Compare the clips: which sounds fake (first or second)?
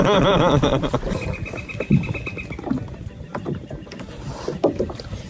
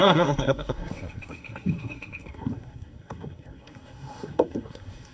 second